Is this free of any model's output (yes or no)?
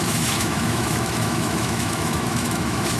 no